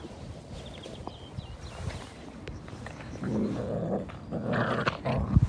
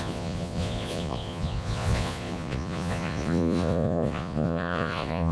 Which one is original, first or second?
first